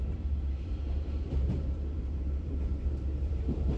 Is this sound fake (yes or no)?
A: yes